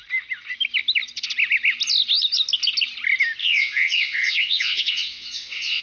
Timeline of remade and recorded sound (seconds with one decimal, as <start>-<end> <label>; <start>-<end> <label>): 0.0-3.4 recorded; 3.4-5.8 remade